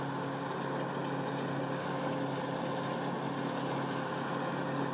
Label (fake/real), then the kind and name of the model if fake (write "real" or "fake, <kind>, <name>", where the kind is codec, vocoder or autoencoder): real